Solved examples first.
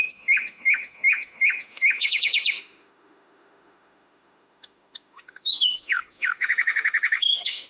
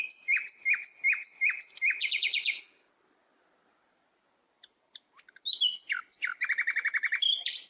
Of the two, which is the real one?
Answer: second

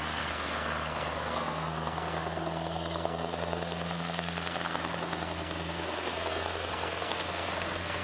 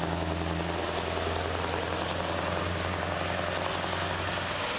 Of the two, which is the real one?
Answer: second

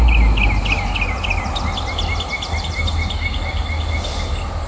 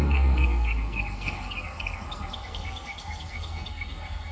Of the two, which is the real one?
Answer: first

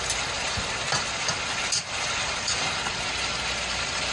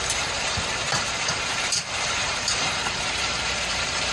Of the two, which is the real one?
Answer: first